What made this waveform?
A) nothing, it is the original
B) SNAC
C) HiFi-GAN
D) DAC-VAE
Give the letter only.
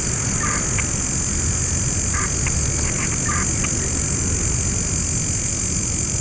A